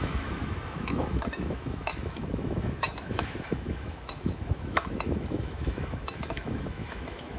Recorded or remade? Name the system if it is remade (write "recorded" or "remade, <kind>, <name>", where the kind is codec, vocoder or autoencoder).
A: remade, autoencoder, DAC-VAE